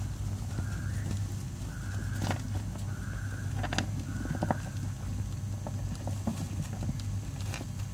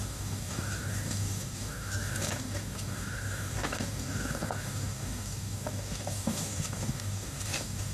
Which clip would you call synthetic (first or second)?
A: second